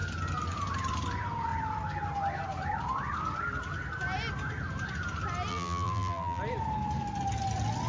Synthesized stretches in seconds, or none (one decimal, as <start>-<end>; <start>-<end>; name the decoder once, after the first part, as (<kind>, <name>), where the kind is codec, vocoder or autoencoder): 5.5-6.4 (vocoder, BigVGAN v2)